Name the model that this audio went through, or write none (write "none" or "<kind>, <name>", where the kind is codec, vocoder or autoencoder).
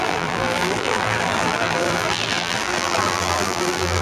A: vocoder, BigVGAN v2